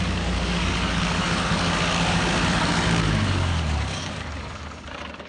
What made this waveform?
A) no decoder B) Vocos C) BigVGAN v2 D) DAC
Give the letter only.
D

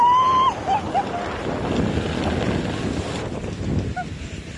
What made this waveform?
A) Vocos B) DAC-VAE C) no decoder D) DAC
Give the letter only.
C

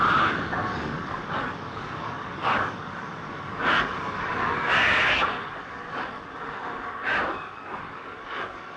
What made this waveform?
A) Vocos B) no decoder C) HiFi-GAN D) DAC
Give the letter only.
D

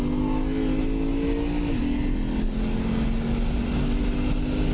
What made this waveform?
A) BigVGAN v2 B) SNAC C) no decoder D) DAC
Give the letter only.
C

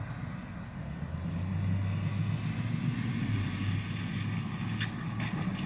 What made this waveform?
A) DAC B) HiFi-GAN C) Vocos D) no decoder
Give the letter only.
D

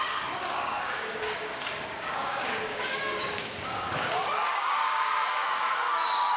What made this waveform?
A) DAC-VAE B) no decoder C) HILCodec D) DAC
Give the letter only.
D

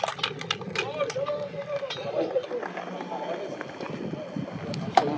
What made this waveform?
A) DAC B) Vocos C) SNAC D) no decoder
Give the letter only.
D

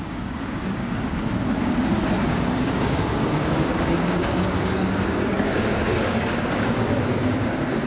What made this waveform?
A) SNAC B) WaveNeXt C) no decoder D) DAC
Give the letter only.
D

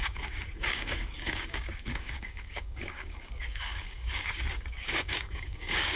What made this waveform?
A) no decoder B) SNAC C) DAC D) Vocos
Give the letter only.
C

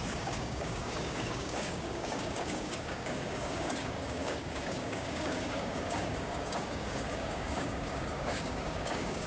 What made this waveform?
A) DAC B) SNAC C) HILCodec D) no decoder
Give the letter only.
A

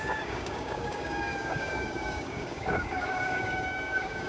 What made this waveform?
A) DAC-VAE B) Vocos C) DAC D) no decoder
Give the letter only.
C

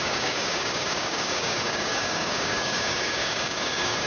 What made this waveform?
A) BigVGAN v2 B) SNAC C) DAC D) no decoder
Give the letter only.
C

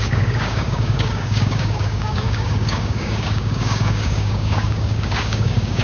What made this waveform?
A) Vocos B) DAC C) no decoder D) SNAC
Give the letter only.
B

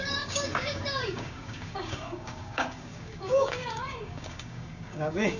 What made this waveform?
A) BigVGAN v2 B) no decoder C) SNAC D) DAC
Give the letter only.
D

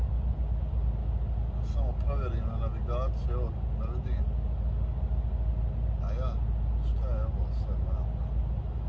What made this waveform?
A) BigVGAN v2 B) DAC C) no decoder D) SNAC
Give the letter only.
C